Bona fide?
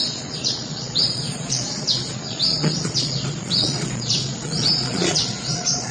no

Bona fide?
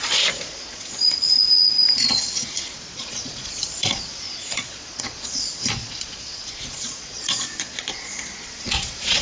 no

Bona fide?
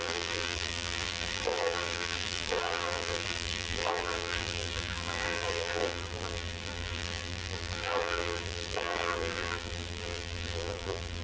no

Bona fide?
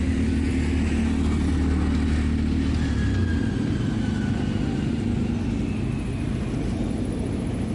yes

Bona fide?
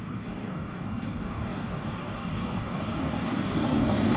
no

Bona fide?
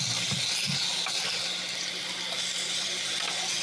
yes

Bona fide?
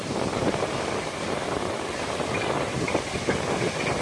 yes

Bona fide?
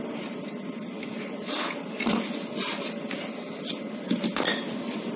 yes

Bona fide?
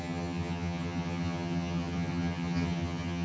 no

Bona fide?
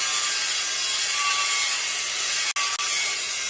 yes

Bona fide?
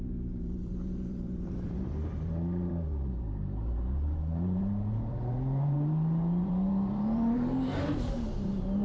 no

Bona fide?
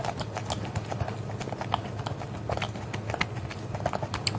yes